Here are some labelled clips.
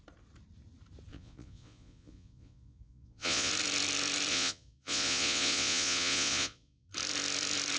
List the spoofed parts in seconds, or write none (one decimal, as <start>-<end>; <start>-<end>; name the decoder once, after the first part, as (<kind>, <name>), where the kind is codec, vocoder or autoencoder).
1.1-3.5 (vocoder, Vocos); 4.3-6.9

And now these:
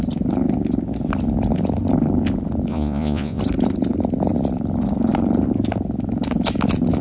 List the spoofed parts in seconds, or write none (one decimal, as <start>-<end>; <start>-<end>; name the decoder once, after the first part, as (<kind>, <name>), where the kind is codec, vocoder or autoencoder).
2.7-3.4 (vocoder, Vocos)

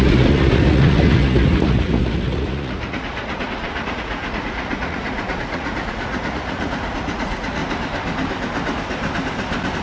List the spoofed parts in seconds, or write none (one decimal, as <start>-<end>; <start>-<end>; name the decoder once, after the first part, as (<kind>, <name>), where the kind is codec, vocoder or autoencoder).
0.0-7.6 (vocoder, Vocos)